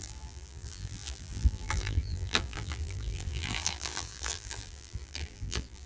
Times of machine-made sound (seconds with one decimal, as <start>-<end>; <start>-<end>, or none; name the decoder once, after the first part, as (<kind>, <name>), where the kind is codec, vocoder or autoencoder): 0.0-5.9 (vocoder, BigVGAN v2)